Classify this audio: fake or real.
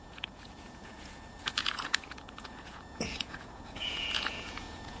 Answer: fake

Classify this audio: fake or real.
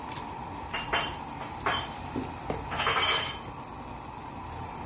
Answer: real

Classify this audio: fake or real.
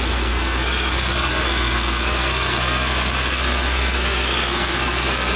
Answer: fake